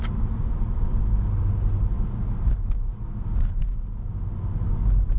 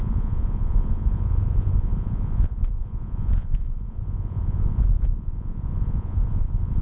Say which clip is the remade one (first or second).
second